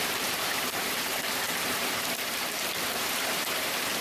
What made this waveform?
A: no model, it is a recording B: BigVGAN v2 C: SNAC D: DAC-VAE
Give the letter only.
B